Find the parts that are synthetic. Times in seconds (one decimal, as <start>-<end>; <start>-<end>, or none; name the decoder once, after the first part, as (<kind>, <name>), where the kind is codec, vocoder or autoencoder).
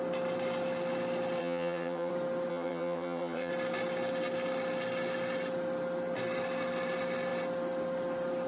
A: 1.4-2.1 (vocoder, HiFi-GAN); 2.5-3.5